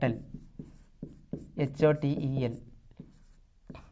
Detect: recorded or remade recorded